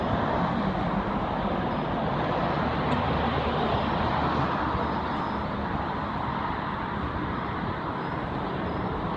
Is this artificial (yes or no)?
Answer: no